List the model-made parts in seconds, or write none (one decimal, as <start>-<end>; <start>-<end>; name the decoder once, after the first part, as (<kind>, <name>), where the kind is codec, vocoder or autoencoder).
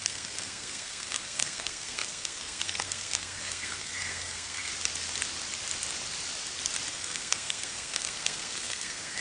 0.0-4.7 (codec, SNAC); 6.9-9.2